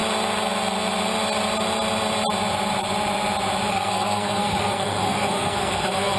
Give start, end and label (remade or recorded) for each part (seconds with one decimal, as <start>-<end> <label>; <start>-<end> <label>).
0.0-3.7 recorded; 3.7-6.2 remade